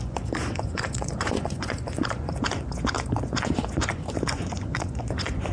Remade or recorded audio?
remade